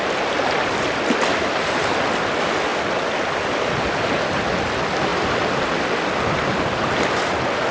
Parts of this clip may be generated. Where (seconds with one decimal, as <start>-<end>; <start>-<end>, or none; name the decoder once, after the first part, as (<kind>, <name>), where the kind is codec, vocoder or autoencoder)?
none